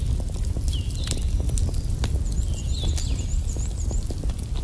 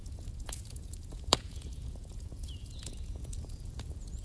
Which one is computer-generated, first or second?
second